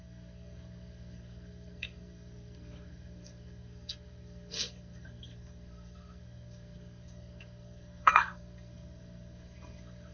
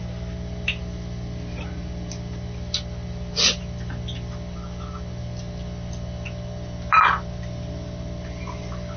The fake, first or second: first